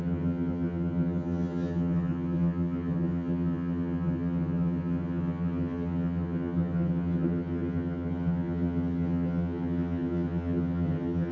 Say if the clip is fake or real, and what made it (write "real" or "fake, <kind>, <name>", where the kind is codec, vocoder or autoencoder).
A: fake, vocoder, HiFi-GAN